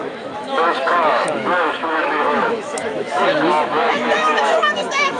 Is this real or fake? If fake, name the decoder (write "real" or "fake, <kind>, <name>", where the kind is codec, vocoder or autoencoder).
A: fake, autoencoder, DAC-VAE